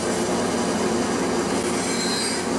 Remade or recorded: recorded